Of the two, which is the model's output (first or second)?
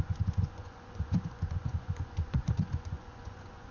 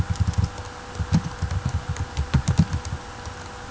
first